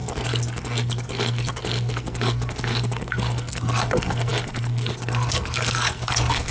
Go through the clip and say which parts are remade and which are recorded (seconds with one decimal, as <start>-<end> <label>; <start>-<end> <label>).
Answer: 0.0-6.5 remade